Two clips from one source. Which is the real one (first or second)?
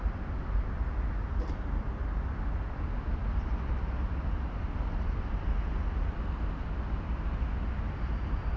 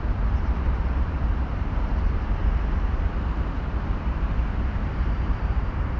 first